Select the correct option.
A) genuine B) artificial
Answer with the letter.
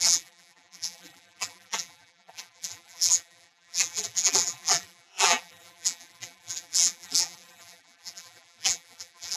B